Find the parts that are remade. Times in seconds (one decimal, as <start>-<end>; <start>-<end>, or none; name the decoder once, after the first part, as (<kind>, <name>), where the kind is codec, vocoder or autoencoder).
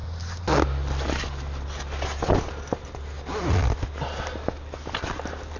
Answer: none